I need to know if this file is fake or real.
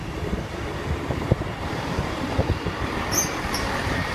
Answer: fake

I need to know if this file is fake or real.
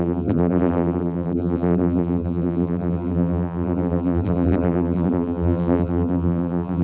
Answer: fake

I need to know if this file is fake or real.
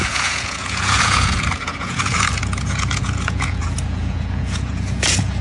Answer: fake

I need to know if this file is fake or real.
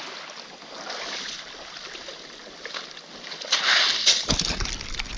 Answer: real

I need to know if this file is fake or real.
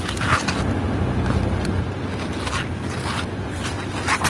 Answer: real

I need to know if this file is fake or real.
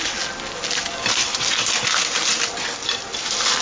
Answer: real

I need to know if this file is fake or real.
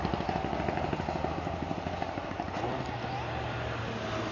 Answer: real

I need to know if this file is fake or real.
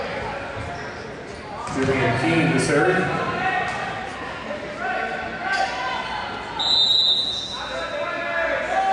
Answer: real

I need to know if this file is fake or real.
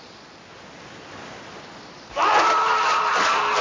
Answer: real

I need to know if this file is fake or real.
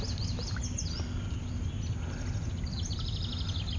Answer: real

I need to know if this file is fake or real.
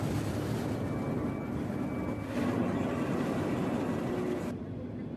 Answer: real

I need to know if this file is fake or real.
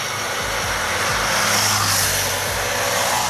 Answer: real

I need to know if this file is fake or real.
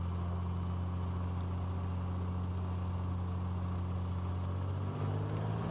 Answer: real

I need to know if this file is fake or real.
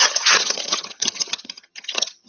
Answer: fake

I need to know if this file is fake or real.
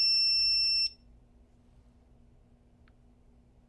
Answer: real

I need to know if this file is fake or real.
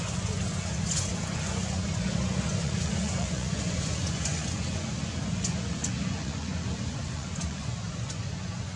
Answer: fake